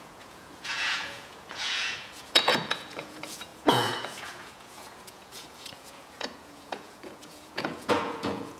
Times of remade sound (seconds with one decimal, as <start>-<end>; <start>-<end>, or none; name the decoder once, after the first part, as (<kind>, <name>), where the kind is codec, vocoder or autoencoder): 0.0-8.6 (vocoder, Vocos)